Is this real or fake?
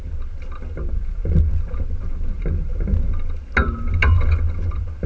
real